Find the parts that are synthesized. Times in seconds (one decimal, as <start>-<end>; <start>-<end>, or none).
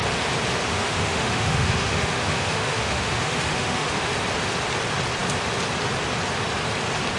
0.7-4.1